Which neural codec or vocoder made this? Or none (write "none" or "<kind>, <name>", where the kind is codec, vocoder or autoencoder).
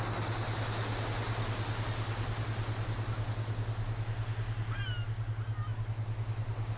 none